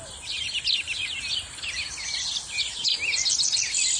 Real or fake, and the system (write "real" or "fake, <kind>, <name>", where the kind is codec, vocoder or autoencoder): real